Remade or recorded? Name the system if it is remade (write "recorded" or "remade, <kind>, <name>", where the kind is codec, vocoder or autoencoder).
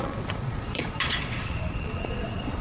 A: remade, vocoder, Vocos